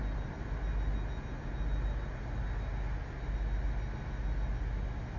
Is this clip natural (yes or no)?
yes